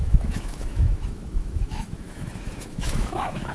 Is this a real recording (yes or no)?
no